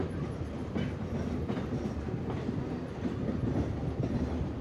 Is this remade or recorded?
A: recorded